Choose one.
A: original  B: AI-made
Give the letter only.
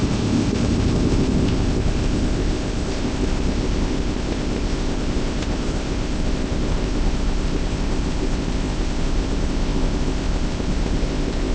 B